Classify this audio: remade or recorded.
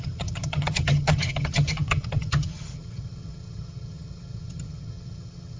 remade